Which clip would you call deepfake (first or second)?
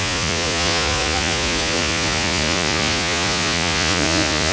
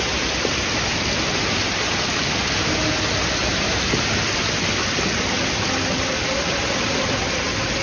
first